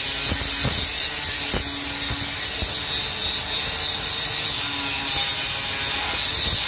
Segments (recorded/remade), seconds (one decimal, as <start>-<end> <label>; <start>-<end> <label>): 0.0-6.7 recorded